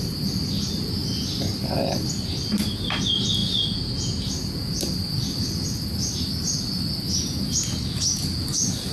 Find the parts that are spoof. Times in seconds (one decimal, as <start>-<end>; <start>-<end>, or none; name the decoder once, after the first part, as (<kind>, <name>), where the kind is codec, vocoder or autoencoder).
none